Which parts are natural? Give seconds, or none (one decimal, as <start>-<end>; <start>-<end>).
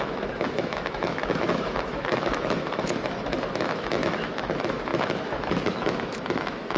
none